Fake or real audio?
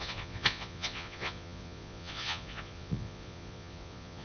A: fake